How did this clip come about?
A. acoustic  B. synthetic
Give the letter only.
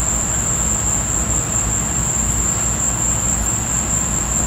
A